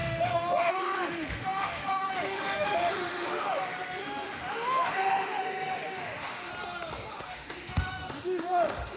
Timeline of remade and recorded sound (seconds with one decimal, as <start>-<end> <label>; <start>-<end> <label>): 0.0-6.5 remade; 6.5-7.1 recorded; 7.1-9.0 remade